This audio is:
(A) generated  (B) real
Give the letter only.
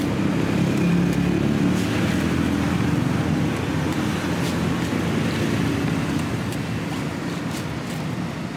B